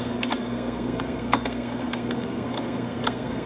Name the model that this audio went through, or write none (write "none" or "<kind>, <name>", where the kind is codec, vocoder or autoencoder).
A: codec, SNAC